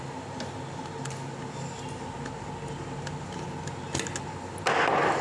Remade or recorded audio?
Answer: recorded